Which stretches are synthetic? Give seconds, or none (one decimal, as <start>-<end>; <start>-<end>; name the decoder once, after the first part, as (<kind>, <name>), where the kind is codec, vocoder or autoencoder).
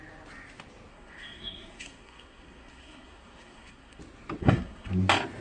0.9-4.0 (codec, SNAC); 4.4-4.9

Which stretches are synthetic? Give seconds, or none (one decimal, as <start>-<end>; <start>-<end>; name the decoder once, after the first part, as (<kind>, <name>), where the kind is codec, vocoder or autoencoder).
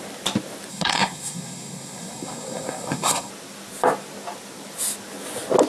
0.7-3.3 (codec, SNAC)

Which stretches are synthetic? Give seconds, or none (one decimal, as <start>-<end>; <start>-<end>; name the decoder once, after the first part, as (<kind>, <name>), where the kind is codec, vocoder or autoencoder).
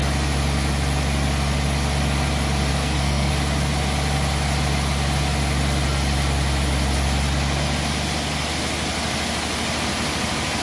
2.7-3.3 (codec, SNAC)